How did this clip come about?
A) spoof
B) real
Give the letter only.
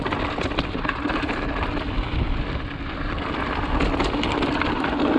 B